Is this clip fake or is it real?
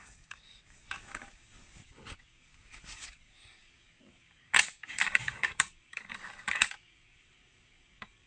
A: fake